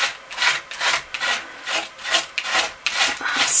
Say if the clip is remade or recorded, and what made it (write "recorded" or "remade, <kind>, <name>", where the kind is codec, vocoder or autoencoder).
recorded